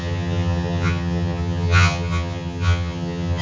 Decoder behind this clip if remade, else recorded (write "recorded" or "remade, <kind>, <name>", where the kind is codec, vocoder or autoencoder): remade, vocoder, HiFi-GAN